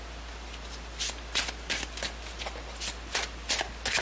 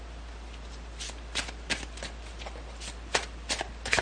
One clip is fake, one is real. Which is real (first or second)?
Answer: first